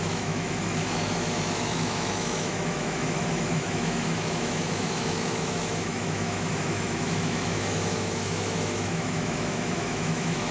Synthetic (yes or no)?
yes